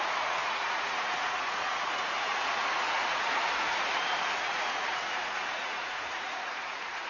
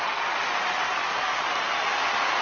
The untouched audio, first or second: second